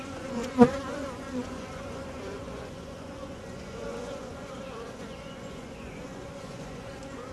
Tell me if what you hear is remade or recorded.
remade